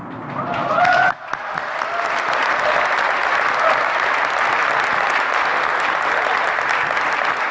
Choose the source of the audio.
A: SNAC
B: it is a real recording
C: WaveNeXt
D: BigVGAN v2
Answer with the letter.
B